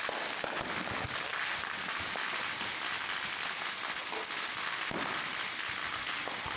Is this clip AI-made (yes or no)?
no